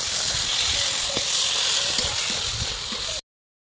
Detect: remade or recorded recorded